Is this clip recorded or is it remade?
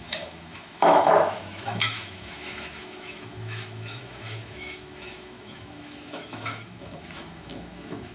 remade